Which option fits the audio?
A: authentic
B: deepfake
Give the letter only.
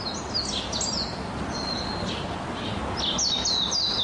A